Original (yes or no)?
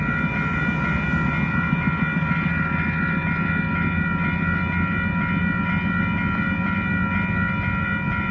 yes